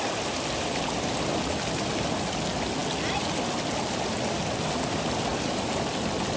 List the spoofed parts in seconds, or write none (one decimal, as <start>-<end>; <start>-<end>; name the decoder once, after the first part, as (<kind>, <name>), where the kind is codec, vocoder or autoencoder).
none